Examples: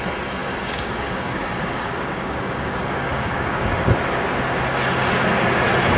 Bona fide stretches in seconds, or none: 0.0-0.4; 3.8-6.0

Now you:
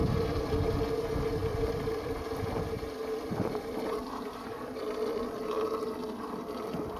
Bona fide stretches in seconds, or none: 0.7-1.4; 5.4-7.0

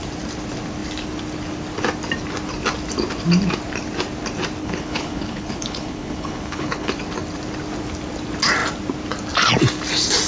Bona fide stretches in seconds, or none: 0.0-4.6; 6.9-10.3

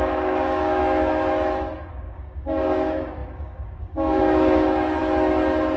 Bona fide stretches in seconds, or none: 0.8-1.9; 5.0-5.8

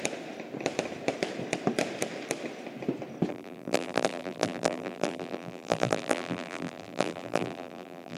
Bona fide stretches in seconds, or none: 0.0-3.3